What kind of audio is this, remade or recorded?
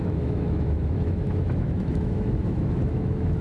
remade